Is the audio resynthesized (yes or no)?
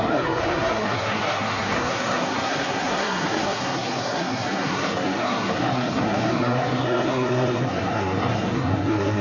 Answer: yes